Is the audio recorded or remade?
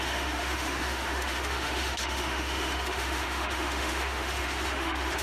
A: remade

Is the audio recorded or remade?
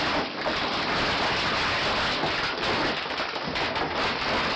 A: recorded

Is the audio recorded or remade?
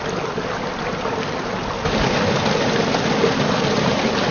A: recorded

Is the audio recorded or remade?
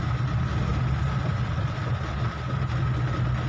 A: recorded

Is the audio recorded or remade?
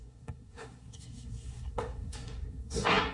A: remade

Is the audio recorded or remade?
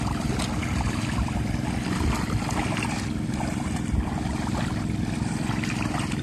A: recorded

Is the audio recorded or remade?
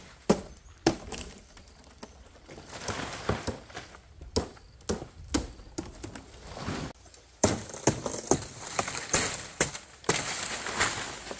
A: recorded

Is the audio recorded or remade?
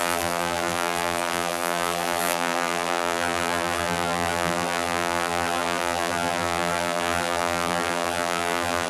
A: remade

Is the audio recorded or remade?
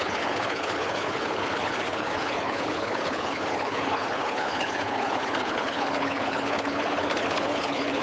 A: remade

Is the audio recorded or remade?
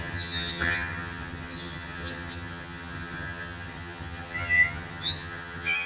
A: remade